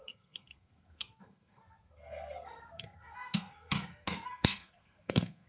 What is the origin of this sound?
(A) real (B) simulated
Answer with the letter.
B